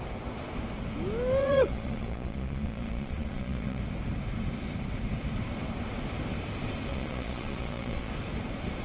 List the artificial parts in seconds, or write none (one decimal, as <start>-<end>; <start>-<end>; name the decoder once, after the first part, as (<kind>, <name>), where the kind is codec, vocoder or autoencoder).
1.4-3.8 (vocoder, Vocos); 6.9-8.1